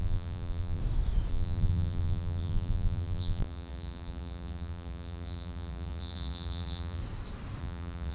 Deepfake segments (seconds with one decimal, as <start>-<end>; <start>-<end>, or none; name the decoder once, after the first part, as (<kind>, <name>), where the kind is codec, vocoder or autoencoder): 0.0-0.8 (vocoder, BigVGAN v2); 1.3-7.0; 7.6-8.1